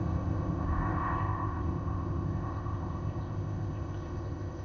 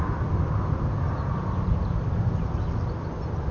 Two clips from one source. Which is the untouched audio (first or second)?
second